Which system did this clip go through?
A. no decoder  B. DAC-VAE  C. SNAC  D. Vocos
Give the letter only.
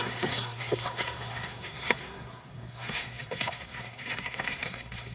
C